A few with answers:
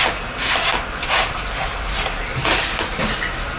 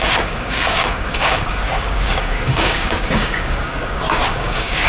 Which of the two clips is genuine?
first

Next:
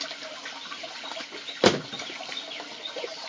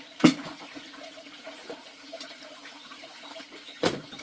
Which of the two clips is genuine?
first